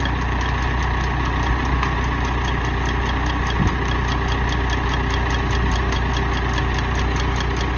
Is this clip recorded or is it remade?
recorded